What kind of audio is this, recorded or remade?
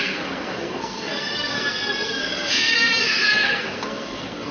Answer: remade